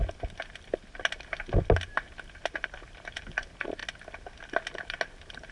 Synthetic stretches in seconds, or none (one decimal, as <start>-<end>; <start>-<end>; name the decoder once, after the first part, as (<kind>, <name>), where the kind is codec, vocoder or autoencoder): none